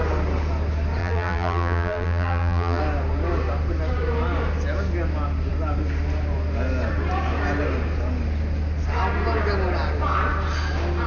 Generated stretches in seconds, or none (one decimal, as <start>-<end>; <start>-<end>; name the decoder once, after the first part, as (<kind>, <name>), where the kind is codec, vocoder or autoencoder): 1.0-2.8 (vocoder, BigVGAN v2)